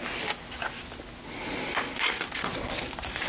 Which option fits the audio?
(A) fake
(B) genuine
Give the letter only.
B